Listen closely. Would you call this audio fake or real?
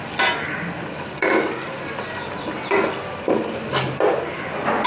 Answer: real